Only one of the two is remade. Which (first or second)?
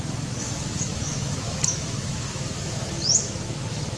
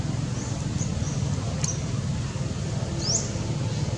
first